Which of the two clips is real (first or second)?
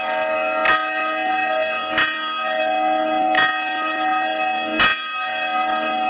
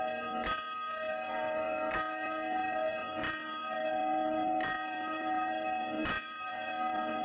first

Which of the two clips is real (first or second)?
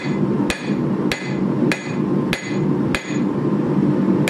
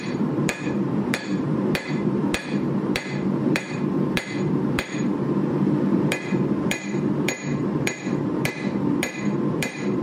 first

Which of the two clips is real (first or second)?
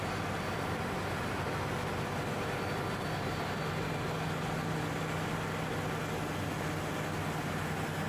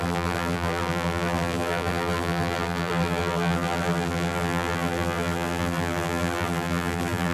first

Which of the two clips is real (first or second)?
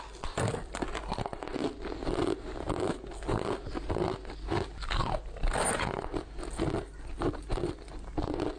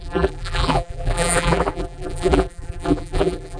first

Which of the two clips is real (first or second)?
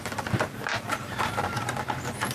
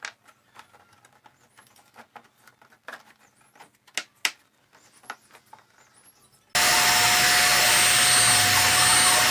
second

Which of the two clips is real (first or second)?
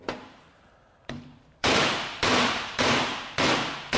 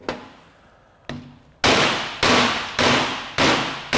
second